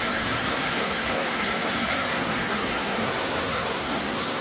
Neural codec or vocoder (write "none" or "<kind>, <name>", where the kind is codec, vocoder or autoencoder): codec, SNAC